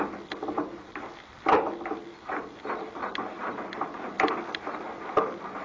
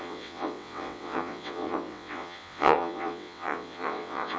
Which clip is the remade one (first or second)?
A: second